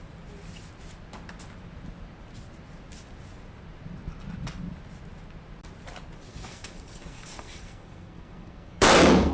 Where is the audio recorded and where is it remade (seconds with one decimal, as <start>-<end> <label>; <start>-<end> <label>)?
0.0-6.3 recorded; 6.3-9.3 remade